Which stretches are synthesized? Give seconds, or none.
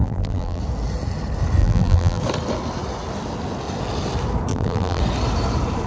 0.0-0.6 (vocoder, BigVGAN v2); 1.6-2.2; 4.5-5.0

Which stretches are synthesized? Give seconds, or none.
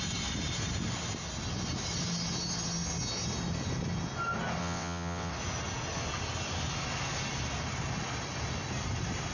4.6-5.3 (vocoder, WaveNeXt)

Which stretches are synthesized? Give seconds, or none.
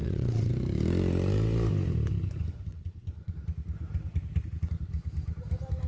0.0-0.5 (vocoder, WaveNeXt); 2.7-3.3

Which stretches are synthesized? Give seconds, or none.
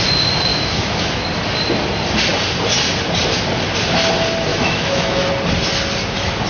0.5-1.3 (autoencoder, DAC-VAE); 4.5-5.3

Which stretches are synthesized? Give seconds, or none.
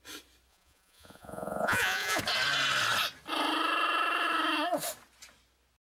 0.5-2.2 (vocoder, Vocos)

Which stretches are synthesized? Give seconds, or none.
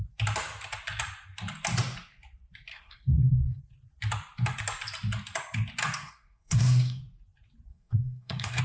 2.7-3.6 (codec, SNAC); 6.0-7.0; 7.7-8.6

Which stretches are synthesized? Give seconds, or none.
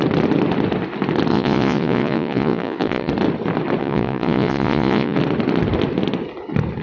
1.3-3.1 (vocoder, Vocos); 3.8-5.2